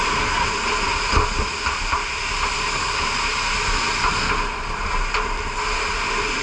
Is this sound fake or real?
real